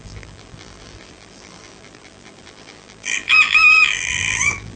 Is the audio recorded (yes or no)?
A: no